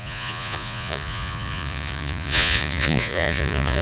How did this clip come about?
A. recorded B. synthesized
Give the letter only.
B